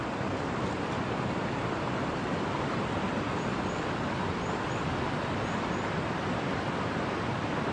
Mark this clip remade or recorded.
recorded